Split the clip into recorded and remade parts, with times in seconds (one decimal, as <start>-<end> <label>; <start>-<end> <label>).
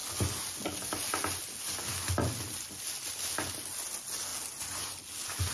0.0-5.5 recorded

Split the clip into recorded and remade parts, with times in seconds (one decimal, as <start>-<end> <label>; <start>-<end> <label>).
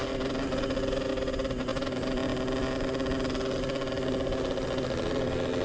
0.0-5.6 recorded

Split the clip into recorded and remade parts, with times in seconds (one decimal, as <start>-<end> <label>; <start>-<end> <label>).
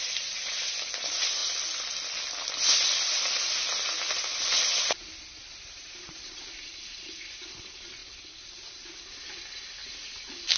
0.0-5.4 recorded; 5.4-7.6 remade; 7.6-10.6 recorded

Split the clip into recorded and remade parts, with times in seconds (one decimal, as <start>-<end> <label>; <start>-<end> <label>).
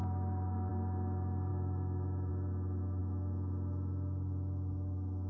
0.0-0.7 remade; 0.7-1.5 recorded; 1.5-2.3 remade; 2.3-5.3 recorded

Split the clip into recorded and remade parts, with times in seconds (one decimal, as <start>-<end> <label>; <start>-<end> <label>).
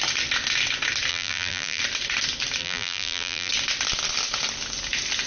0.0-1.1 recorded; 1.1-1.8 remade; 1.8-2.6 recorded; 2.6-3.5 remade; 3.5-5.3 recorded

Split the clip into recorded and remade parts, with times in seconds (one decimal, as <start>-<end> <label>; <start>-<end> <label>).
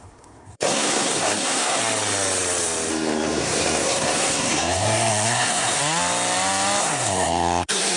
0.0-1.8 remade; 1.8-2.9 recorded; 2.9-5.8 remade; 5.8-6.8 recorded; 6.8-8.0 remade